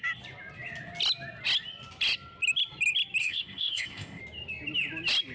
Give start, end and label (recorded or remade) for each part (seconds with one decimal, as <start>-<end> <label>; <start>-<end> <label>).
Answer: 0.0-3.2 recorded; 3.2-4.2 remade; 4.2-5.3 recorded